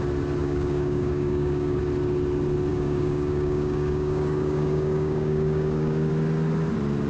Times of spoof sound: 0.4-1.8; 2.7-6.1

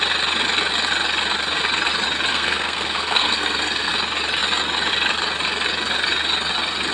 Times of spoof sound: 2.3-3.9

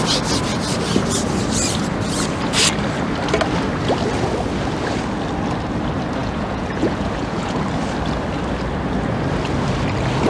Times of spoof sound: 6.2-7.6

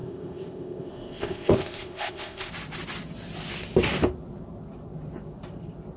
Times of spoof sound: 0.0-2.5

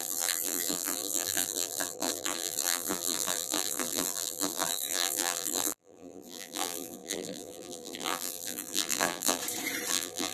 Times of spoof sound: 0.0-9.4; 9.9-10.3